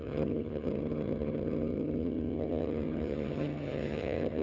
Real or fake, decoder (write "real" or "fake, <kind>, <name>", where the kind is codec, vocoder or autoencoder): fake, vocoder, HiFi-GAN